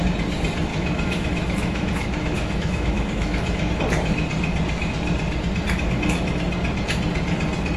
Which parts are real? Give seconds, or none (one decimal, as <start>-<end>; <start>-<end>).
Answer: 0.0-0.7; 3.7-7.8

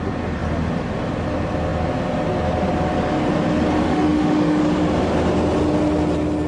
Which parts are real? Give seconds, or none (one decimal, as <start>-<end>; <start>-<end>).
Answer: 0.0-3.8; 4.6-6.5